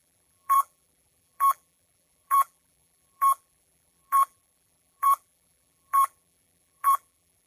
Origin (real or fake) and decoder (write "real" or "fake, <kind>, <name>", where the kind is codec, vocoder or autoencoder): fake, vocoder, BigVGAN v2